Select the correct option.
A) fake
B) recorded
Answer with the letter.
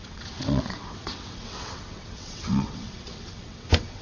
A